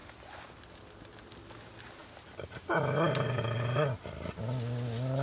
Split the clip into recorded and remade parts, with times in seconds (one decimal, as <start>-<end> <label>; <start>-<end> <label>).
0.0-5.2 recorded